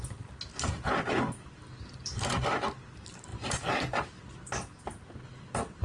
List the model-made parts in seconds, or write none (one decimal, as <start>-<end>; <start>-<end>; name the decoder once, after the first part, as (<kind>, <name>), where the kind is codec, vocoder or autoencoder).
3.3-4.1 (vocoder, BigVGAN v2)

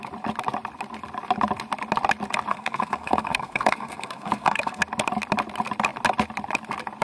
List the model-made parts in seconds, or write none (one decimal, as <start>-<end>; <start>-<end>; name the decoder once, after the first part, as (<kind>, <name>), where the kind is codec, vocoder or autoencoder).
2.5-4.8 (codec, SNAC)

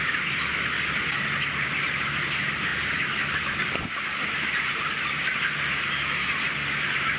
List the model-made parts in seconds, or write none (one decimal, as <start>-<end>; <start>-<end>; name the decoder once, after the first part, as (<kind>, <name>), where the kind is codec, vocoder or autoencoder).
none

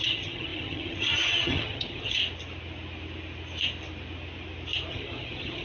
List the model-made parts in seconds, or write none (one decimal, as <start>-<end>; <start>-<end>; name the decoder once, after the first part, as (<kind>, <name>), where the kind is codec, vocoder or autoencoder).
0.0-2.2 (vocoder, HiFi-GAN); 4.9-5.6

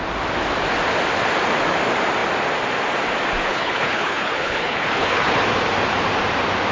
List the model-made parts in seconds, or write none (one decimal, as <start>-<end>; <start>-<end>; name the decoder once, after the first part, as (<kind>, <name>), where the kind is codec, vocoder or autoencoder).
3.5-5.4 (codec, HILCodec)

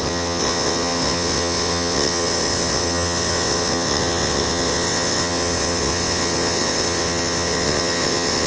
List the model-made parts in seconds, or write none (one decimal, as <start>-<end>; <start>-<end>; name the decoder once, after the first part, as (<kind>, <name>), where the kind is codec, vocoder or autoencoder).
0.0-8.5 (vocoder, WaveNeXt)

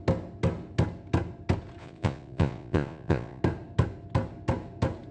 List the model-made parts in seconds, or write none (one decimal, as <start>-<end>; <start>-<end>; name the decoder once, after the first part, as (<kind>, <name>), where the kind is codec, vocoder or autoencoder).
1.8-3.4 (vocoder, Vocos)